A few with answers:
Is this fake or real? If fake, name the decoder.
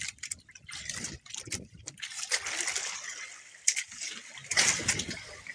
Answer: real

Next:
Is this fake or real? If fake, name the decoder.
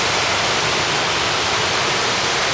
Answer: real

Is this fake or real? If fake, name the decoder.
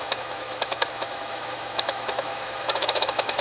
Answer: fake, autoencoder, DAC-VAE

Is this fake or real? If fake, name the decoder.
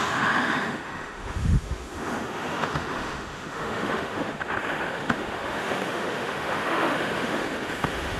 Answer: fake, autoencoder, DAC-VAE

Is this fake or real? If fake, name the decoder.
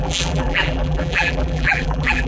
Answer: fake, vocoder, BigVGAN v2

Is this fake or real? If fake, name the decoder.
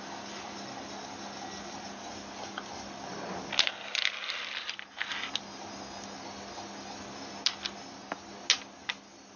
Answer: real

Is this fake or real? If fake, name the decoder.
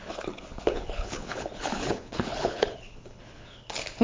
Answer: fake, codec, HILCodec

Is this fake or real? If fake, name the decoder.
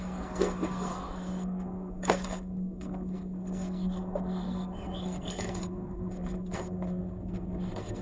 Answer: fake, codec, SNAC